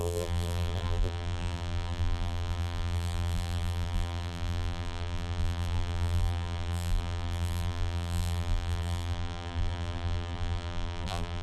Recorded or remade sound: remade